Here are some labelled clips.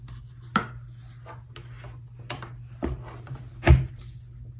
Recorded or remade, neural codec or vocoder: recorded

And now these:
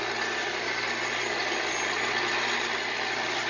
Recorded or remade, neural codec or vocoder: recorded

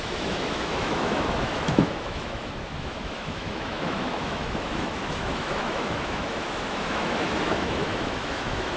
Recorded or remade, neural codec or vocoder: remade, autoencoder, DAC-VAE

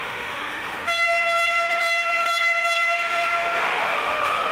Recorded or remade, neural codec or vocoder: remade, autoencoder, DAC-VAE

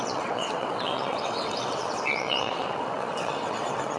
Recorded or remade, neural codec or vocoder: remade, vocoder, WaveNeXt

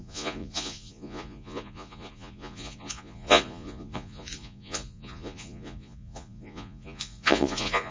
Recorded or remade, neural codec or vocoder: remade, vocoder, Vocos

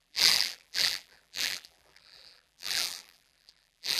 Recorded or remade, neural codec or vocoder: remade, vocoder, BigVGAN v2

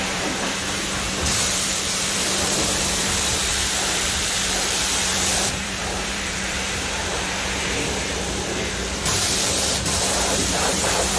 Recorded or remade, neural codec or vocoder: remade, vocoder, BigVGAN v2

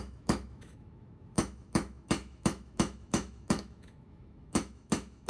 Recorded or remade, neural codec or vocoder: remade, autoencoder, DAC-VAE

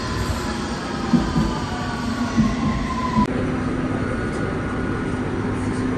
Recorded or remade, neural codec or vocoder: recorded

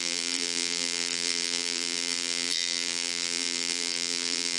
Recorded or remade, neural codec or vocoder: remade, vocoder, BigVGAN v2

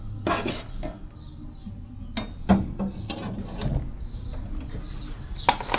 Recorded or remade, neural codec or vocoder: recorded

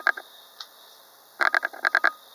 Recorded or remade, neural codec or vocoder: recorded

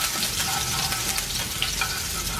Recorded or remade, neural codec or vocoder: remade, vocoder, BigVGAN v2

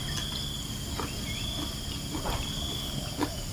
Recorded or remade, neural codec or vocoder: recorded